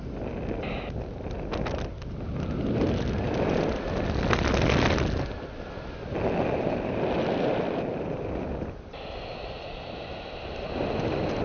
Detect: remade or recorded recorded